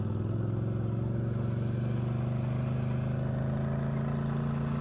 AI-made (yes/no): no